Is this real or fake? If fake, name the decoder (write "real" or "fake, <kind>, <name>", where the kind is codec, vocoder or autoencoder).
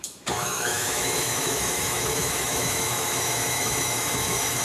fake, autoencoder, DAC-VAE